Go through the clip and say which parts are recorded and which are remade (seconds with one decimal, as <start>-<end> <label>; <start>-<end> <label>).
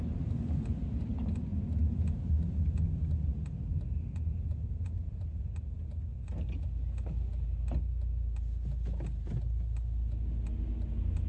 0.0-11.3 recorded